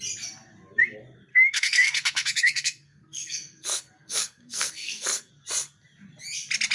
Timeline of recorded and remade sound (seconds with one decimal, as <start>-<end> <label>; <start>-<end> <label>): 0.0-1.3 recorded; 1.3-5.3 remade; 5.3-6.7 recorded